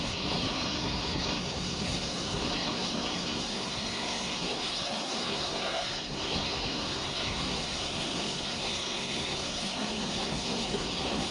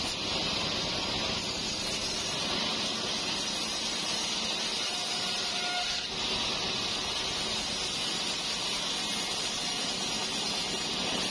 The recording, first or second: second